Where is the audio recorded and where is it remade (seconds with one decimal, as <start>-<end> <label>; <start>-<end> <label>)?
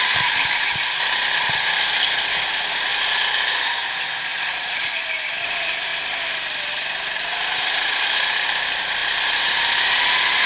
0.0-4.3 recorded; 4.3-4.8 remade; 4.8-10.5 recorded